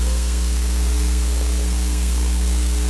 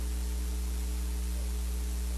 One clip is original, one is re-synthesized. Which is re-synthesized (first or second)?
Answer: first